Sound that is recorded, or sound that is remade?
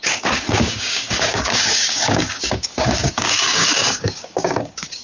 remade